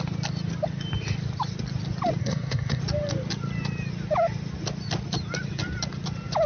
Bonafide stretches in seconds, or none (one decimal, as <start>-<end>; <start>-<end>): 0.0-2.2; 2.8-6.5